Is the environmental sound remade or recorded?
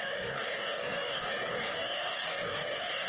remade